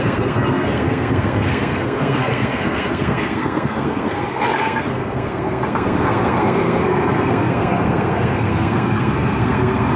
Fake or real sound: fake